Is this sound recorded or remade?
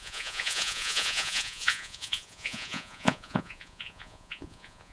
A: remade